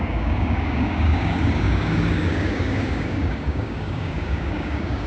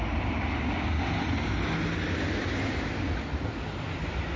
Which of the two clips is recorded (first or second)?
second